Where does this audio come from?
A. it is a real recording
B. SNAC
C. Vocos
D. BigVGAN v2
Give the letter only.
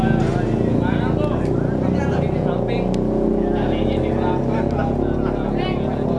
A